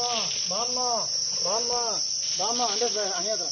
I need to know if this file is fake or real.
real